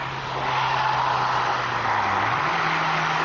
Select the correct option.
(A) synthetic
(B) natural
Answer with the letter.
B